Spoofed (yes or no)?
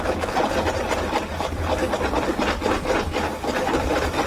no